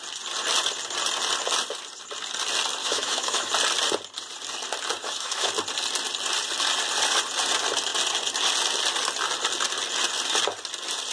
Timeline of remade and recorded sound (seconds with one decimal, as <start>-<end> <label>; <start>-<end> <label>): 0.0-2.8 recorded; 2.8-3.5 remade; 3.5-5.0 recorded; 5.0-5.5 remade; 5.5-11.1 recorded